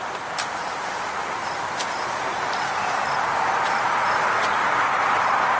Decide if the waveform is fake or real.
fake